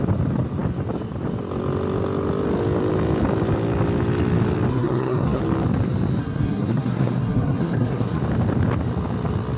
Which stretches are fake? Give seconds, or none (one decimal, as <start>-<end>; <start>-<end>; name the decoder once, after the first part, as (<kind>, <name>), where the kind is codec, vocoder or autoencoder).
4.7-5.4 (codec, SNAC); 6.2-8.2